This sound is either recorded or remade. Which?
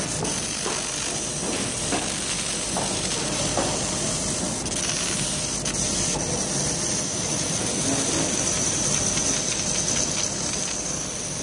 remade